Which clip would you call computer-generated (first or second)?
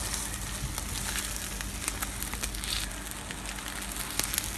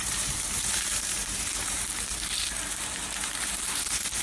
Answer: second